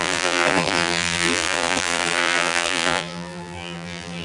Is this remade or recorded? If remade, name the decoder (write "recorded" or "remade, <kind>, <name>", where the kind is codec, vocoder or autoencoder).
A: remade, vocoder, BigVGAN v2